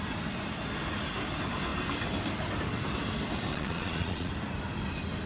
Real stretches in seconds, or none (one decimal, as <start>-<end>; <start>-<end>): 0.0-3.5; 4.3-5.3